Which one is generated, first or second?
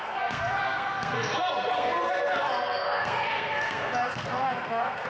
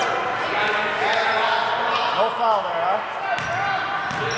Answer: first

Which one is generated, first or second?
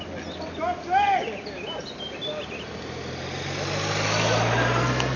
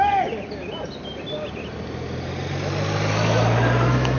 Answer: second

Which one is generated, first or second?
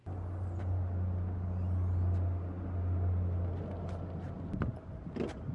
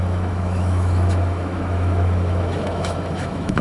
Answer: second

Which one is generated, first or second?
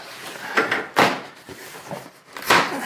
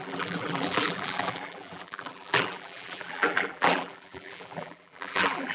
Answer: second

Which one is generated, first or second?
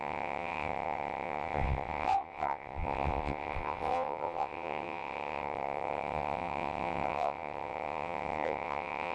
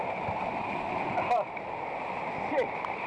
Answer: first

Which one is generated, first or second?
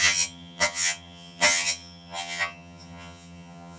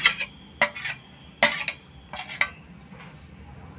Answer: first